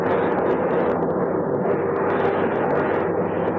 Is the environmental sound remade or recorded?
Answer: recorded